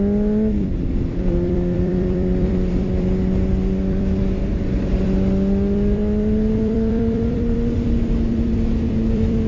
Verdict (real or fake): fake